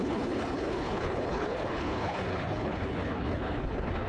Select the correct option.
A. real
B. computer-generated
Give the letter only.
B